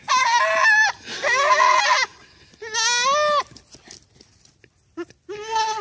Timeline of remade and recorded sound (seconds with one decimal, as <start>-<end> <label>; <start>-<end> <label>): 0.0-5.8 recorded